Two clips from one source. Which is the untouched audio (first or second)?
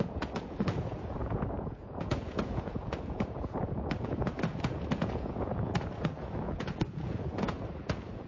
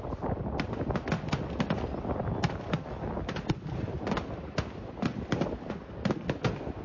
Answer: second